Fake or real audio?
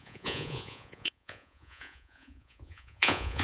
fake